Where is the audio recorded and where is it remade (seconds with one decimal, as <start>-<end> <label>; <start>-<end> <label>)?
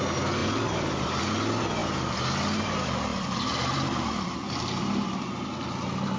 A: 0.0-0.4 recorded; 0.4-1.2 remade; 1.2-3.1 recorded; 3.1-6.2 remade